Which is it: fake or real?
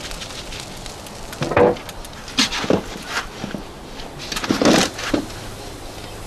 real